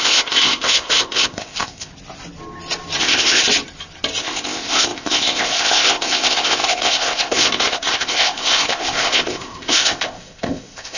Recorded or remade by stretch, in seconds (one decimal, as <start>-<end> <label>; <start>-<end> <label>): 0.0-1.9 remade; 1.9-3.0 recorded; 3.0-3.4 remade; 3.4-4.2 recorded; 4.2-11.0 remade